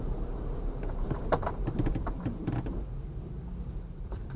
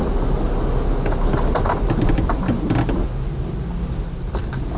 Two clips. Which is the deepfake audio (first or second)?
first